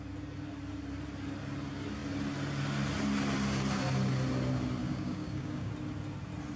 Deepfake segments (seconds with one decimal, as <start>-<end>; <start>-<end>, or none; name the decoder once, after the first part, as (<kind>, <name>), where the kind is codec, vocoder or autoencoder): 4.8-5.7 (codec, DAC)